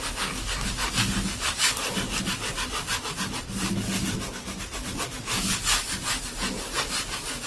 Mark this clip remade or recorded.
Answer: recorded